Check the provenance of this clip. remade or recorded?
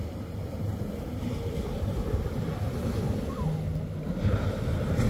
recorded